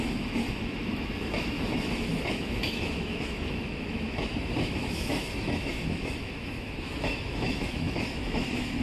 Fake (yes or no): yes